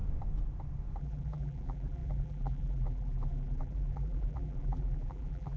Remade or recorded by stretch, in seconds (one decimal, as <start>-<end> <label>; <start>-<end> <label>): 0.0-1.0 recorded; 1.0-5.6 remade